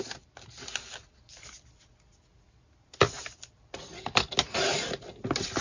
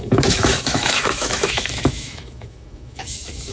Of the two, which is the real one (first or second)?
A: first